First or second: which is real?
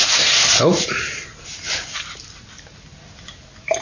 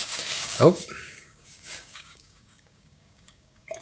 first